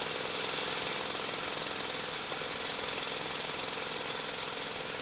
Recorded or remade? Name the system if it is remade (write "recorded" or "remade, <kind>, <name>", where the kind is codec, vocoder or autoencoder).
recorded